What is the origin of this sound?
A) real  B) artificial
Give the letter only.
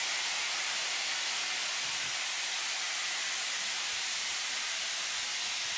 A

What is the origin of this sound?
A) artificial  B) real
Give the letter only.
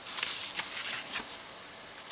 B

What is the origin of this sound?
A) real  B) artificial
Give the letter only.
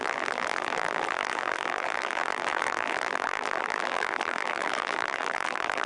B